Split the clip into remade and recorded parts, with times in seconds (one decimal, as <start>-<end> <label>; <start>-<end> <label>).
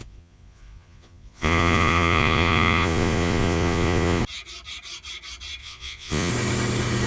0.0-4.2 remade; 4.2-5.6 recorded; 5.6-6.3 remade; 6.3-7.1 recorded